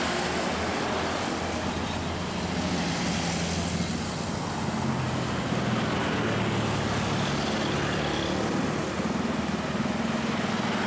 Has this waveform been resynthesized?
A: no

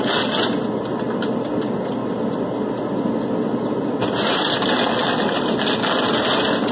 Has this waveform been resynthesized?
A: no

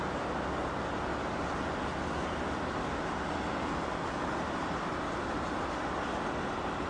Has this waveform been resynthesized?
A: no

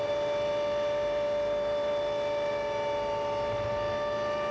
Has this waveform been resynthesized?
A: no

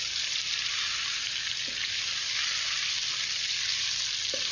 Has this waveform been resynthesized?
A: no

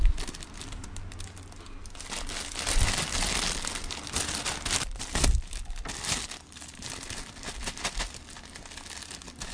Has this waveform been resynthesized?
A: no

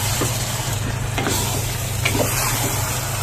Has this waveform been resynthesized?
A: no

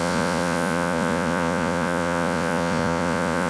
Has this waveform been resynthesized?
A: yes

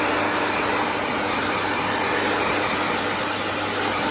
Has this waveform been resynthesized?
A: no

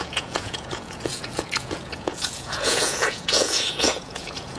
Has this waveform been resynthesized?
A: yes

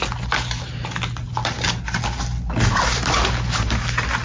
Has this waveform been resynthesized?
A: no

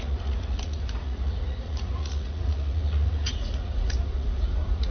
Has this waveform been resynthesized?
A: yes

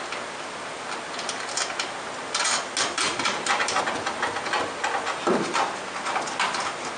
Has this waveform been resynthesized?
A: no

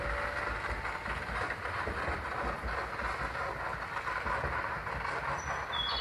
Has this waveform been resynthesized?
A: no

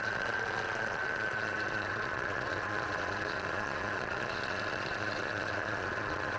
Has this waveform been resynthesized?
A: yes